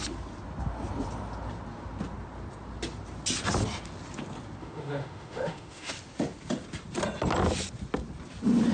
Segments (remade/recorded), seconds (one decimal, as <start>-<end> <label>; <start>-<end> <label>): 0.0-4.6 recorded; 4.6-5.9 remade; 5.9-8.7 recorded